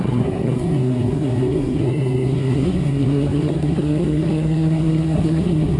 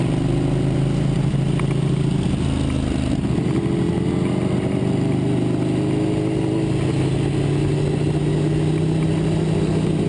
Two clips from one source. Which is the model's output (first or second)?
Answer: first